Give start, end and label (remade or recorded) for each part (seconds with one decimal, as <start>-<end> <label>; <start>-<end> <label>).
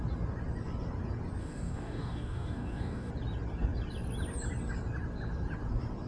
0.0-1.4 recorded; 1.4-3.1 remade; 3.1-6.1 recorded